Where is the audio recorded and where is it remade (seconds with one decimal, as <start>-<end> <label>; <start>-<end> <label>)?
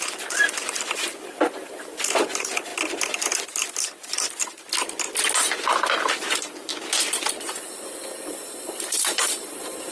0.0-2.7 remade; 2.7-6.1 recorded; 6.1-6.7 remade; 6.7-8.3 recorded; 8.3-9.9 remade